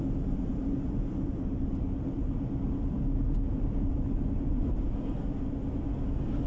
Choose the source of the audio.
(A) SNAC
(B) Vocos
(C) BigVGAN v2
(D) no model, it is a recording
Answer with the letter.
D